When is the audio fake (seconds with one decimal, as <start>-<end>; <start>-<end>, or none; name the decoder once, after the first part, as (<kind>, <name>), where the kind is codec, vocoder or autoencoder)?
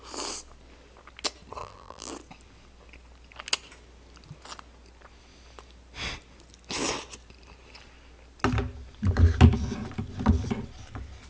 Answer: 1.6-2.1 (vocoder, BigVGAN v2)